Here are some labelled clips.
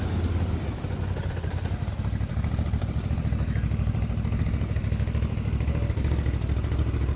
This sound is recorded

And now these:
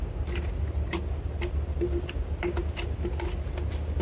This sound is recorded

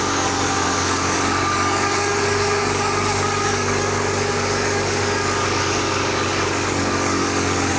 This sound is remade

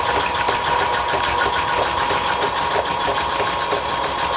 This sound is recorded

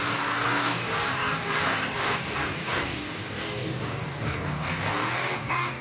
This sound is remade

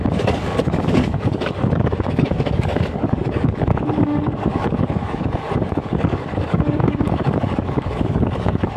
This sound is remade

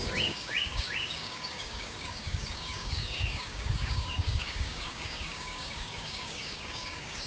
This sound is remade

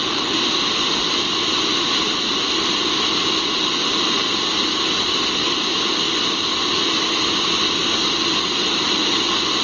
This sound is recorded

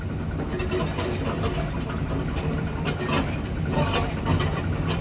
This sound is recorded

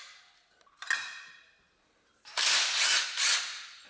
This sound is recorded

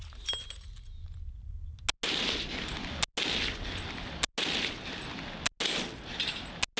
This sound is recorded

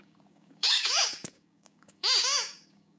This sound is remade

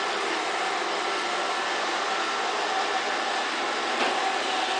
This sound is recorded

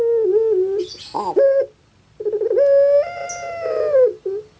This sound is recorded